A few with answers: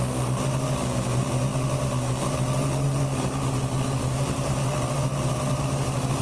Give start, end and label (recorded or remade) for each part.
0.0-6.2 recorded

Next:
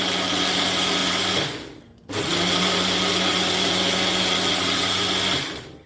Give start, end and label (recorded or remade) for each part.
0.0-5.9 recorded

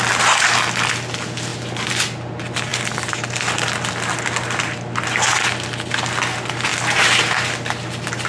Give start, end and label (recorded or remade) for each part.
0.0-8.3 recorded